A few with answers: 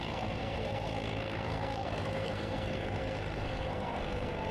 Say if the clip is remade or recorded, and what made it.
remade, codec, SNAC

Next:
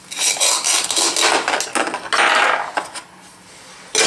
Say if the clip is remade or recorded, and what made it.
recorded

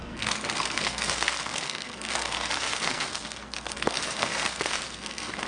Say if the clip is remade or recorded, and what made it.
remade, codec, SNAC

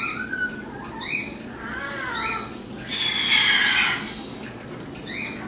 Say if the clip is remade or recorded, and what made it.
recorded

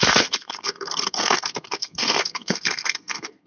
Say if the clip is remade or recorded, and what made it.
remade, codec, SNAC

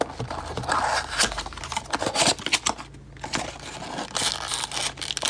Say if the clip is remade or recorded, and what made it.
recorded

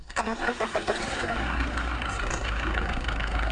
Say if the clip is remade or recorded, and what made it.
remade, codec, SNAC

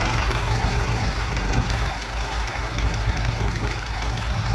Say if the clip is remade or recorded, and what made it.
remade, codec, SNAC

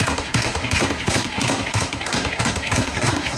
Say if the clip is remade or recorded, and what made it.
remade, codec, SNAC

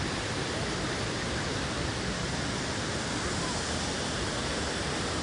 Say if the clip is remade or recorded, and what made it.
recorded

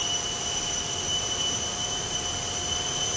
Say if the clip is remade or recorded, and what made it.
recorded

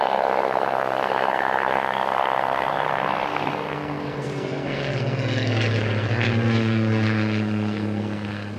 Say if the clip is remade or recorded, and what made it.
remade, codec, SNAC